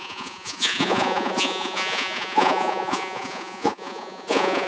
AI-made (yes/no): yes